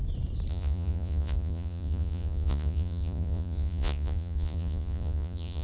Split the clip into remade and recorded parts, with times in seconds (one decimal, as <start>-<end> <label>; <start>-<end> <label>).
0.0-0.5 recorded; 0.5-5.6 remade